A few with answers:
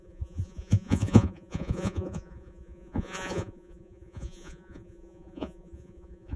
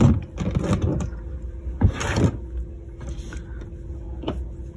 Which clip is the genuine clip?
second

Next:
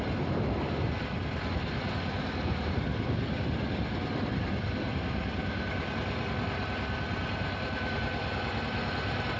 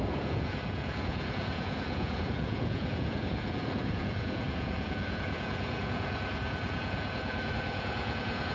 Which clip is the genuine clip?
first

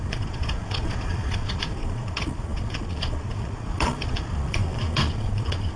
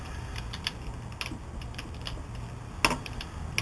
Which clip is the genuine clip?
second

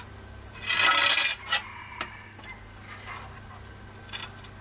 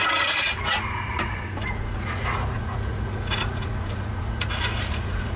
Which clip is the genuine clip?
first